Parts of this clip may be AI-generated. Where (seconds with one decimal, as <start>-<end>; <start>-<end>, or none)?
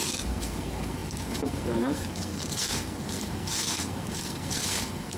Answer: 0.0-5.2